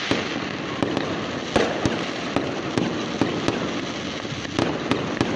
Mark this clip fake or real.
real